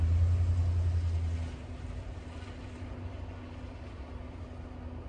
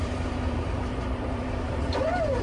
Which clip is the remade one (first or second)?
second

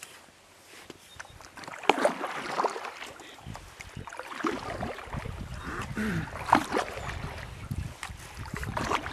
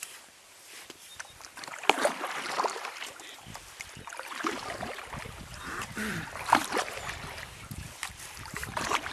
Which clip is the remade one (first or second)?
second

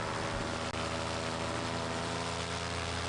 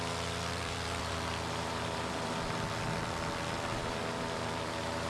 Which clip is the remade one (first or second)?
second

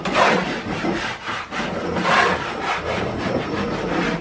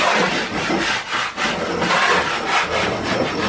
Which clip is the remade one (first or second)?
first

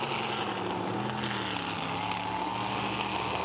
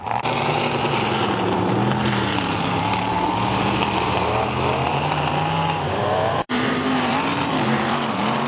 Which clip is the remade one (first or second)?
second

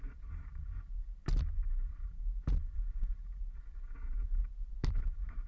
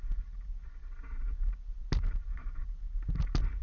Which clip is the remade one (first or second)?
first